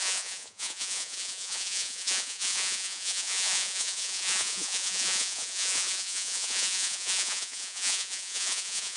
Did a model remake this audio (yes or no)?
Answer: yes